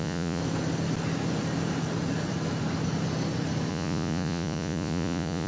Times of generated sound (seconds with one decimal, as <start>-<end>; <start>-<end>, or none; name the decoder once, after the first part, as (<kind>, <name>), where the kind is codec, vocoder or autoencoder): 0.0-0.4 (vocoder, Vocos); 3.7-5.5